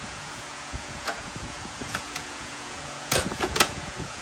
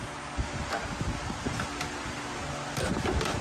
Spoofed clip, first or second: first